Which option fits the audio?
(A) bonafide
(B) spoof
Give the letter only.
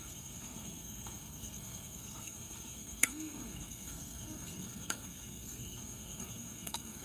B